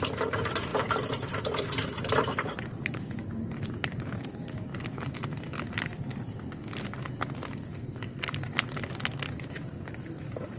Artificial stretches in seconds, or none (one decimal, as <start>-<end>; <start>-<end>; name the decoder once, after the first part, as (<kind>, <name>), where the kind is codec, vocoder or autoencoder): 0.0-4.7 (vocoder, BigVGAN v2); 9.9-10.6